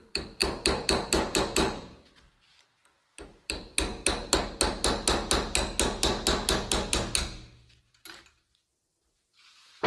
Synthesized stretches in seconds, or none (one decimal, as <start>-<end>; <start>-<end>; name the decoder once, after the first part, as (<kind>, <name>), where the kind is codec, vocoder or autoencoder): 0.0-3.9 (vocoder, BigVGAN v2); 7.8-9.9